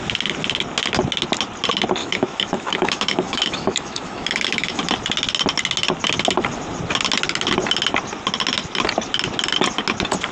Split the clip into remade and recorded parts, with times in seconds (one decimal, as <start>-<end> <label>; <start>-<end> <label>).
0.0-2.0 recorded; 2.0-4.8 remade; 4.8-10.3 recorded